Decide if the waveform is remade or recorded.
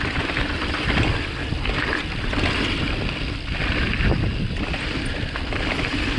remade